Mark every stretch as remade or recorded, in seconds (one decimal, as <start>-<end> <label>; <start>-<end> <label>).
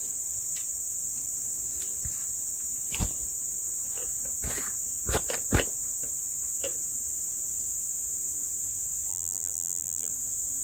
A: 0.0-9.1 recorded; 9.1-10.1 remade; 10.1-10.6 recorded